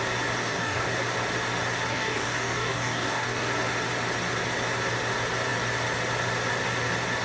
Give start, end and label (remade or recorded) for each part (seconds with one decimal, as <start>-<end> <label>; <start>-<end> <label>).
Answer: 0.0-0.4 recorded; 0.4-0.9 remade; 0.9-1.9 recorded; 1.9-3.5 remade; 3.5-7.2 recorded